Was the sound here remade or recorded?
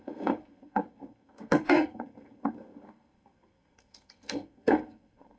remade